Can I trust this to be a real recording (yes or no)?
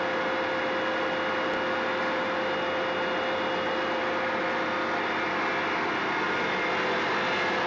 yes